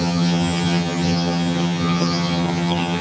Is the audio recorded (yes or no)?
no